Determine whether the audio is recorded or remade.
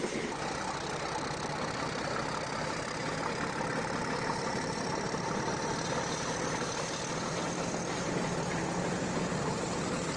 recorded